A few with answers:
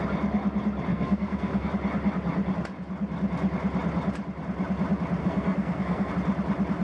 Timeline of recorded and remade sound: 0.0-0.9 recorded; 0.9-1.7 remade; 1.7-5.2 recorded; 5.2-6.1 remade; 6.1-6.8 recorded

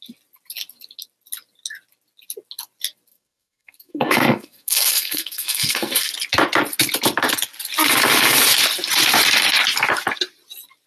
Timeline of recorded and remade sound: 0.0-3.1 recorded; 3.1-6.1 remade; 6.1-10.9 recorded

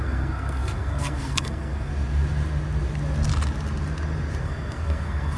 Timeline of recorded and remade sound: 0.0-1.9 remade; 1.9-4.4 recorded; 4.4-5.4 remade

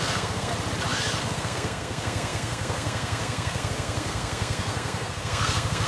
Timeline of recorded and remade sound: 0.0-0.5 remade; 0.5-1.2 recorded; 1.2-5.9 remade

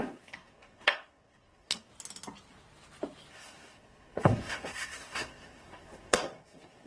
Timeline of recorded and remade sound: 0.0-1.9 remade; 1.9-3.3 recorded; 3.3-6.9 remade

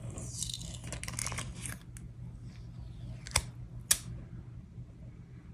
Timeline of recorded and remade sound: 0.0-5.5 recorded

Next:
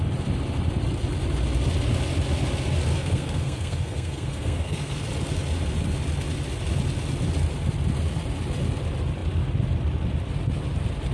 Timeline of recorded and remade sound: 0.0-2.9 recorded; 2.9-5.0 remade; 5.0-11.1 recorded